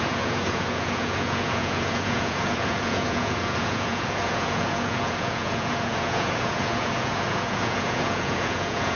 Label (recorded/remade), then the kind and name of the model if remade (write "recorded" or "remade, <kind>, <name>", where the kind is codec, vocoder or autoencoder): remade, vocoder, Vocos